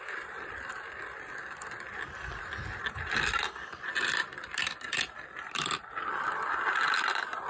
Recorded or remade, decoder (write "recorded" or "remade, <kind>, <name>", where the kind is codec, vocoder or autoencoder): remade, vocoder, BigVGAN v2